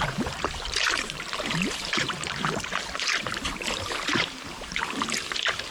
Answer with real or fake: fake